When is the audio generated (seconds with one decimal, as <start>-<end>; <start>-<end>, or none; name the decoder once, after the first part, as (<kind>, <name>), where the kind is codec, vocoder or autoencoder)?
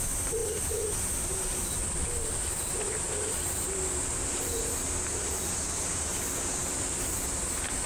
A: 0.0-7.9 (vocoder, BigVGAN v2)